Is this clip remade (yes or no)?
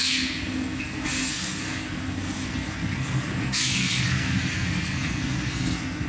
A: yes